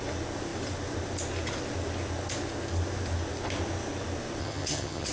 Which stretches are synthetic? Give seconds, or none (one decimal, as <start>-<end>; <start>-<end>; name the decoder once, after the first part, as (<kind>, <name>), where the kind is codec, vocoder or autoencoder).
4.4-5.1 (vocoder, HiFi-GAN)